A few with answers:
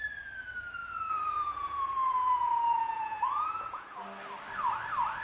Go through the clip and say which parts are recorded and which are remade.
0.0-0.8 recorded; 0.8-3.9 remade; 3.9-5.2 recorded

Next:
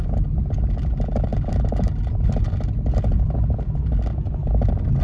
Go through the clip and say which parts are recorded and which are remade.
0.0-5.0 recorded

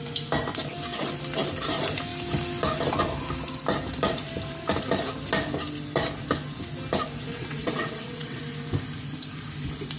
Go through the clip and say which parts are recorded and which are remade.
0.0-7.3 recorded; 7.3-8.4 remade; 8.4-10.0 recorded